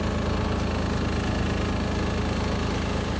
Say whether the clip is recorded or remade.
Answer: recorded